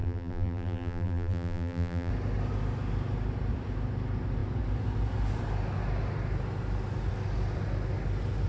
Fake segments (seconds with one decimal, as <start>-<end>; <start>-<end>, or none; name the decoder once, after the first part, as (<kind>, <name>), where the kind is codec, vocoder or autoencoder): 0.0-2.1 (vocoder, BigVGAN v2)